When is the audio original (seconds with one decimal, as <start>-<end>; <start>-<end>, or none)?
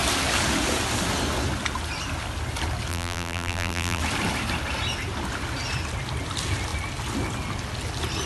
0.0-2.9; 4.0-8.3